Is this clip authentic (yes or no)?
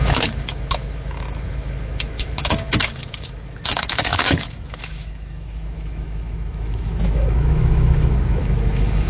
no